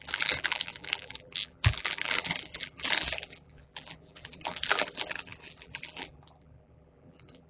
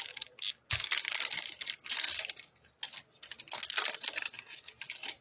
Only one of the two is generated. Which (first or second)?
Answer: first